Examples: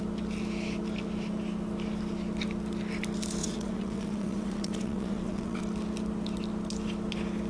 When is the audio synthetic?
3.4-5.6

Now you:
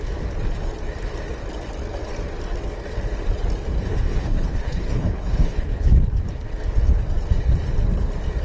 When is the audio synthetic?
3.9-6.0

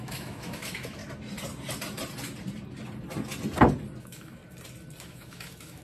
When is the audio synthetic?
0.0-1.0; 4.0-4.4; 5.0-5.8

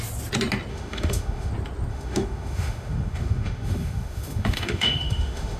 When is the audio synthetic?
0.7-1.5; 1.9-5.6